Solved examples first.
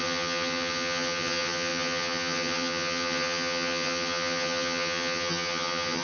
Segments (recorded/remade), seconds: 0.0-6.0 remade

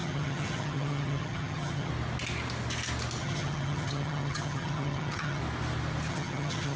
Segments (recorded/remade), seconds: 0.0-1.9 remade; 1.9-3.2 recorded; 3.2-5.4 remade; 5.4-6.1 recorded; 6.1-6.8 remade

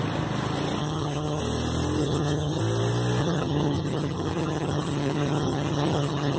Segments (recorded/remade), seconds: 0.0-0.8 recorded; 0.8-1.4 remade; 1.4-2.0 recorded; 2.0-2.6 remade; 2.6-3.2 recorded; 3.2-6.4 remade

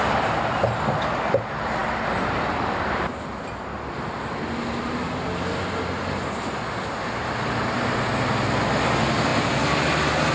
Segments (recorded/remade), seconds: 0.0-10.3 recorded

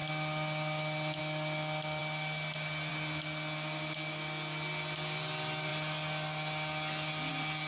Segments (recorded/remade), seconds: 0.0-7.7 recorded

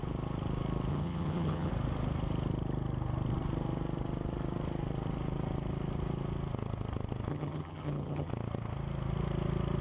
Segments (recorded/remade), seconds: 0.0-0.9 recorded; 0.9-1.7 remade; 1.7-7.3 recorded; 7.3-8.3 remade; 8.3-9.8 recorded

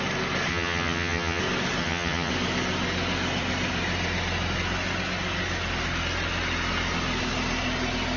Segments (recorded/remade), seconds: 0.0-0.5 recorded; 0.5-1.4 remade; 1.4-1.8 recorded; 1.8-2.3 remade; 2.3-8.2 recorded

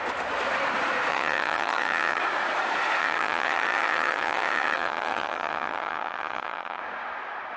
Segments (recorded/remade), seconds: 0.0-1.1 recorded; 1.1-2.2 remade; 2.2-3.0 recorded; 3.0-6.8 remade; 6.8-7.6 recorded